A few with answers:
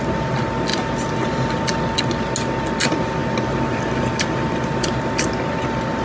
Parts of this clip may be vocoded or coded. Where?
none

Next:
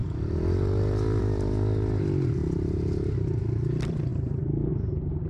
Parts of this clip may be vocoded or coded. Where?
1.2-5.3 (vocoder, BigVGAN v2)

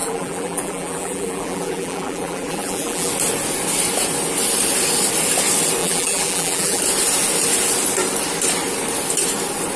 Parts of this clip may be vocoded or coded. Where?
0.0-3.1 (vocoder, BigVGAN v2); 5.8-6.8

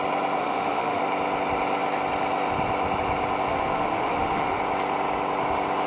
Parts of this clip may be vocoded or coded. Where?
0.4-1.0 (autoencoder, DAC-VAE); 3.5-4.6

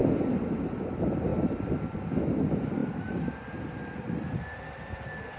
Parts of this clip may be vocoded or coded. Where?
1.3-2.0 (vocoder, BigVGAN v2); 2.8-4.4

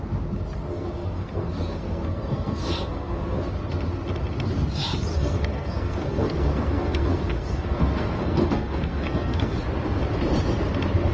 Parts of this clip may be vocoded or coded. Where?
0.7-3.5 (codec, SNAC); 5.1-9.6

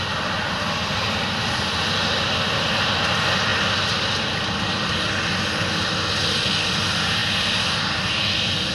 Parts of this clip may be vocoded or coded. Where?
none